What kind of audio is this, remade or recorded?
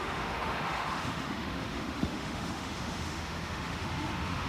remade